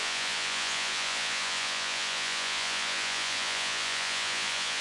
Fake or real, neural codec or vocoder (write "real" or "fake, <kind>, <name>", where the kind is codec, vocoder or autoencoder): fake, vocoder, Vocos